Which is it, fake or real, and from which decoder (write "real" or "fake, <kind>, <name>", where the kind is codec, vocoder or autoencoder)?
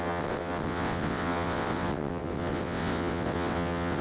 fake, vocoder, WaveNeXt